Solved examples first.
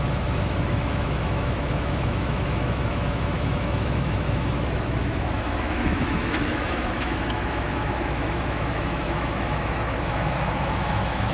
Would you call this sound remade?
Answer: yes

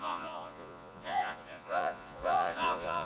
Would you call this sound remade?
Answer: yes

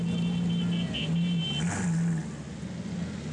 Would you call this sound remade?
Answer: no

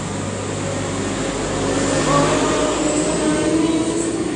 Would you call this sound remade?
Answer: no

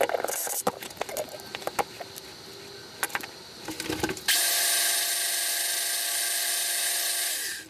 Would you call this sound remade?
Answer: no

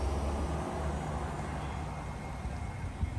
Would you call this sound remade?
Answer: no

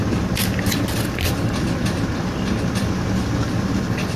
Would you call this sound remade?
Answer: no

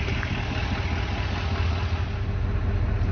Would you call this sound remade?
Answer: no